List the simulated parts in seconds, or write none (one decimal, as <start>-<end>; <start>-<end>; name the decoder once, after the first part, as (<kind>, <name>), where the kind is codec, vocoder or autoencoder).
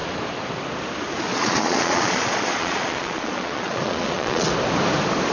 1.3-4.5 (vocoder, Vocos)